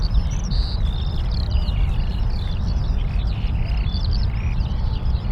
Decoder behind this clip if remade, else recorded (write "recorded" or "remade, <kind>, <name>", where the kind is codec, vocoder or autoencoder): remade, vocoder, BigVGAN v2